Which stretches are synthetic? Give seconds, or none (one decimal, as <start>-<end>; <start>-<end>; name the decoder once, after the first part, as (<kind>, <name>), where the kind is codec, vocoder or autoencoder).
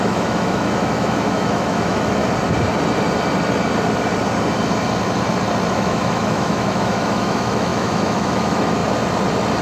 0.0-2.2 (autoencoder, DAC-VAE); 5.7-8.8